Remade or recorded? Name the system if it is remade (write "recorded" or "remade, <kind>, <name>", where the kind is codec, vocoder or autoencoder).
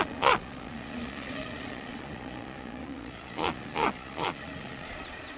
remade, vocoder, Vocos